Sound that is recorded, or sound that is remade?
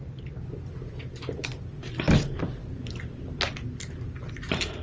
recorded